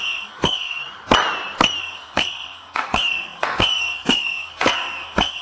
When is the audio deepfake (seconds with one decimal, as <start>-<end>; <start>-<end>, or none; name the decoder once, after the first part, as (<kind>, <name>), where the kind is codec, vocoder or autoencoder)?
0.0-0.8 (codec, SNAC); 1.8-5.4